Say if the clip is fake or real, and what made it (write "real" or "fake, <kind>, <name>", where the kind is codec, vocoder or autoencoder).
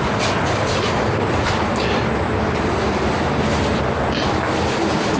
real